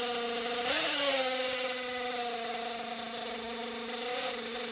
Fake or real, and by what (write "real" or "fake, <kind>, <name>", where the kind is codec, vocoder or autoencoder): real